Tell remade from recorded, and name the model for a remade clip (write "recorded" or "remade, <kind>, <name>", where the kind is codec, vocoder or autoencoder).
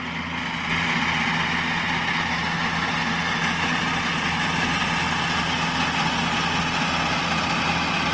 recorded